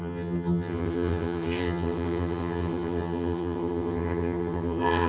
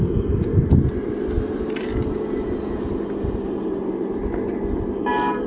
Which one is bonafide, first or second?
second